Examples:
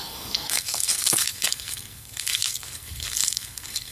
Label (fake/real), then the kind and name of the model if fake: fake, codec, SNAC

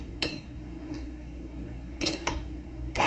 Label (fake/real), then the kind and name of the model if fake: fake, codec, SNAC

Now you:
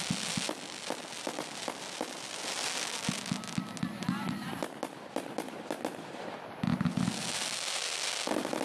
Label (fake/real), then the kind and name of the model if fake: real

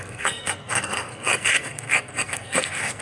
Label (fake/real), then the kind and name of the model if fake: fake, codec, SNAC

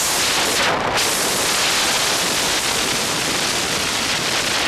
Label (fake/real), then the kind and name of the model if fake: real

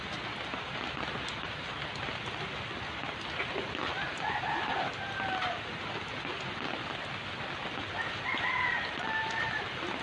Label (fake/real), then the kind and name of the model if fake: real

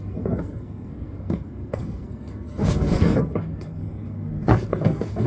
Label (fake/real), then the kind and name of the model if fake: fake, codec, SNAC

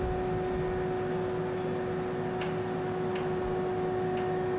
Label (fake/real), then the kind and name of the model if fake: real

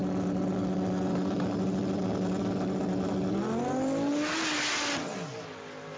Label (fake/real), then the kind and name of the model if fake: real